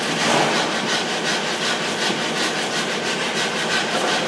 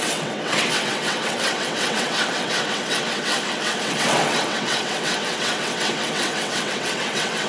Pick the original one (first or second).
first